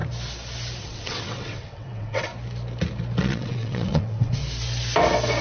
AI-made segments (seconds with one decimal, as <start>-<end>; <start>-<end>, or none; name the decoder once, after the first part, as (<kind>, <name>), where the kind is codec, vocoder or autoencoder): 0.8-2.3 (vocoder, WaveNeXt); 3.2-4.4